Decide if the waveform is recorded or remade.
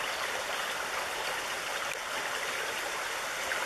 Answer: recorded